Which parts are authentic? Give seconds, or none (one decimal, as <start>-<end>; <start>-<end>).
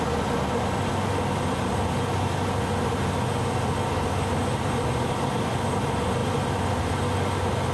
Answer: 0.0-7.7